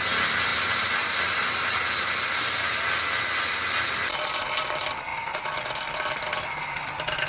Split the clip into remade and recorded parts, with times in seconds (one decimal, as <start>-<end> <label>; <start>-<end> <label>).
0.0-7.3 recorded